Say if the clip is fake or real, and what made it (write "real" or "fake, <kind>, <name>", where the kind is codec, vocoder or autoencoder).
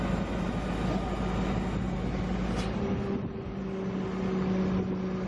real